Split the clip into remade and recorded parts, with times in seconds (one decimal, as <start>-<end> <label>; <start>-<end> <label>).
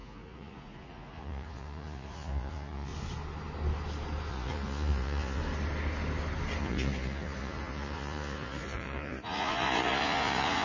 0.0-2.9 remade; 2.9-4.3 recorded; 4.3-5.4 remade; 5.4-6.6 recorded; 6.6-10.6 remade